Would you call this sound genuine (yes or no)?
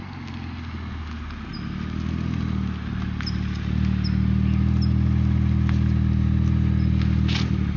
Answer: yes